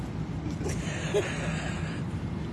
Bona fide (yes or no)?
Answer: yes